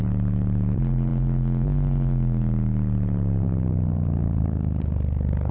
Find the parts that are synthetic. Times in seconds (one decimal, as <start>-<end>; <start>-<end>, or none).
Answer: none